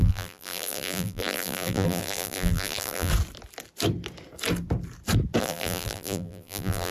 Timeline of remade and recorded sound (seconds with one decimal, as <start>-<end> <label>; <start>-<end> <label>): 0.0-3.1 remade; 3.1-5.4 recorded; 5.4-6.9 remade

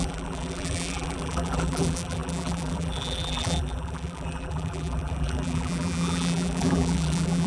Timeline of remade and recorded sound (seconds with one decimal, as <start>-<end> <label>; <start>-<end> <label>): 0.0-7.5 remade

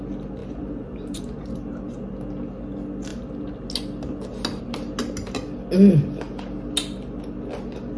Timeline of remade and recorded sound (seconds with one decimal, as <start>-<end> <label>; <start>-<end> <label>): 0.0-0.4 recorded; 0.4-1.2 remade; 1.2-8.0 recorded

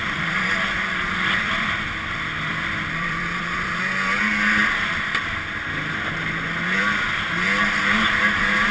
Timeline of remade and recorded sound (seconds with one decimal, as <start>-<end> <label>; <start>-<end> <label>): 0.0-3.8 remade; 3.8-8.7 recorded

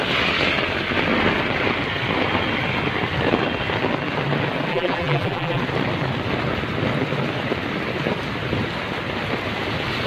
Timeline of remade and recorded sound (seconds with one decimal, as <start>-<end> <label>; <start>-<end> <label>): 0.0-4.7 recorded; 4.7-5.6 remade; 5.6-10.1 recorded

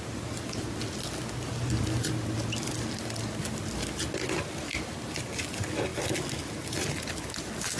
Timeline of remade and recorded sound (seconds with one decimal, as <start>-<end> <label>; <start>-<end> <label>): 0.0-7.8 recorded

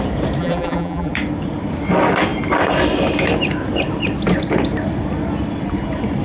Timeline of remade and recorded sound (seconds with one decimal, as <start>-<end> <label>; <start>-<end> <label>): 0.0-0.4 recorded; 0.4-1.1 remade; 1.1-6.2 recorded

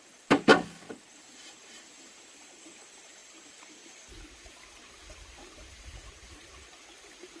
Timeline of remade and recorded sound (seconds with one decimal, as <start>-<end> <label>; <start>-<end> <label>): 0.0-0.5 remade; 0.5-1.0 recorded; 1.0-7.4 remade